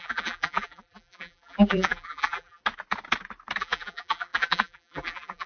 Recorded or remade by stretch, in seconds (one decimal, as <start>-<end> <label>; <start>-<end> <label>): 0.0-2.6 remade; 2.6-3.6 recorded; 3.6-5.5 remade